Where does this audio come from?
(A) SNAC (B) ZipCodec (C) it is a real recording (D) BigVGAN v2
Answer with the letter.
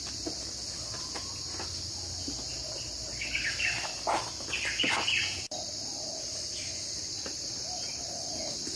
D